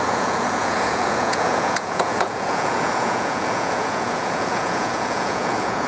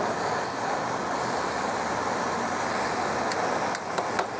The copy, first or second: first